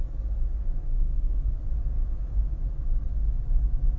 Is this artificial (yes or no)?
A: no